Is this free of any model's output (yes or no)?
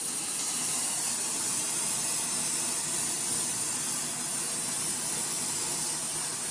yes